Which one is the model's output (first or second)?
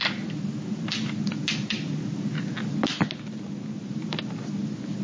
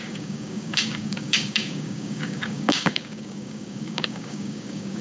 second